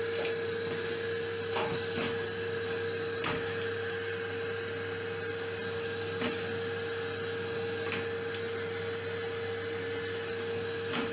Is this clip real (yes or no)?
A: yes